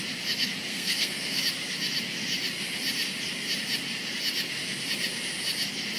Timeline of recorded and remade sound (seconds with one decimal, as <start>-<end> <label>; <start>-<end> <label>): 0.0-0.7 recorded; 0.7-1.4 remade; 1.4-6.0 recorded